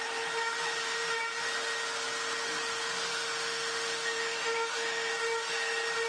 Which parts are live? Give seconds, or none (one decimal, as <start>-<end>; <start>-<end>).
0.0-3.1; 5.1-6.1